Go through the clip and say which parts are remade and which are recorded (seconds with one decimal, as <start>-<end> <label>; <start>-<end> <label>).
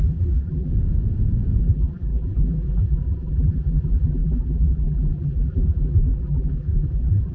0.0-0.7 remade; 0.7-1.6 recorded; 1.6-7.3 remade